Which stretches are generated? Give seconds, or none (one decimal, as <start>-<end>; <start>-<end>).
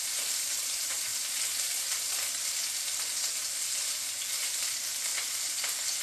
0.0-1.1; 3.3-5.1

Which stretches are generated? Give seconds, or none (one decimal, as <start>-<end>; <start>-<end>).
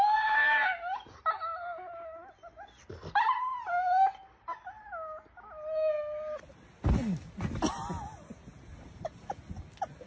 none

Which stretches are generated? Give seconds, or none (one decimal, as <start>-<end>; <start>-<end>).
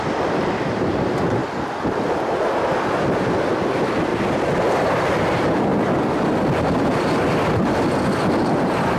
0.0-1.4; 2.9-4.1; 4.8-9.0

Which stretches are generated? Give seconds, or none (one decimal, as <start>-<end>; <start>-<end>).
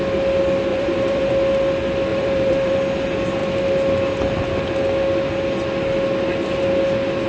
0.7-1.3; 2.1-2.7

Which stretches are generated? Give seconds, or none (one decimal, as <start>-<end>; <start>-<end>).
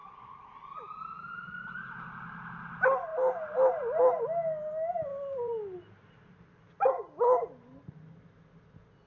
0.0-1.7; 5.1-6.9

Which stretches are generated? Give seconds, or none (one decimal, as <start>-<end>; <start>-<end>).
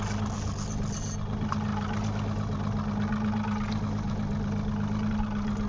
none